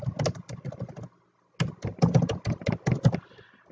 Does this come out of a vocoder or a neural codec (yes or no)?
no